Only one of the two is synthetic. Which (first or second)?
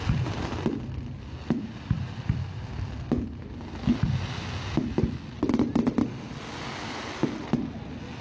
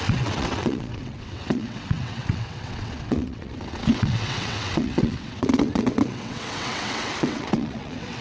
second